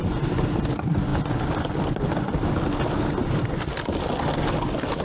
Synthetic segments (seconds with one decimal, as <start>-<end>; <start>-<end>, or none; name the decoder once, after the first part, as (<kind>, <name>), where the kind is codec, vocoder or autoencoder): none